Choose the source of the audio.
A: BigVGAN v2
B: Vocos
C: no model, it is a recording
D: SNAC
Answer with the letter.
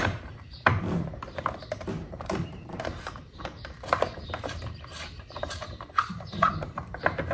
A